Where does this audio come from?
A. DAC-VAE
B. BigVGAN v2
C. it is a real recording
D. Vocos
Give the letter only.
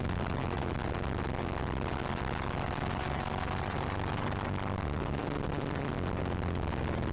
C